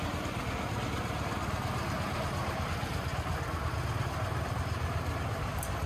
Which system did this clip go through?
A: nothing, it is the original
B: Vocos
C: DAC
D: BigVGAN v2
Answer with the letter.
A